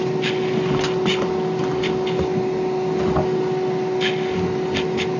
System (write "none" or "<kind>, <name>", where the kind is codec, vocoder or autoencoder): none